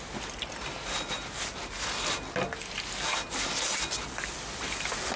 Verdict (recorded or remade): recorded